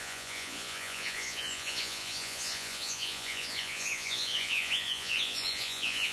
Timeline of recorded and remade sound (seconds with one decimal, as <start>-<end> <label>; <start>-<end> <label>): 0.0-6.1 remade